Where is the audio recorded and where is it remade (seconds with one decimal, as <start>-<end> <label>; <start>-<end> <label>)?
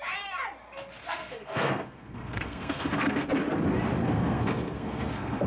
0.0-1.0 recorded; 1.0-3.3 remade; 3.3-4.0 recorded; 4.0-5.5 remade